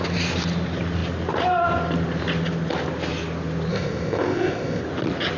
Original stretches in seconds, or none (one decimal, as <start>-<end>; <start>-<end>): 0.0-3.7; 4.8-5.4